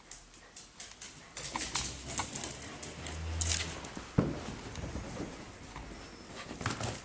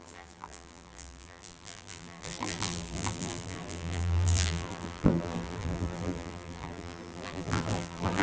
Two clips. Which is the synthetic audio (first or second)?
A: second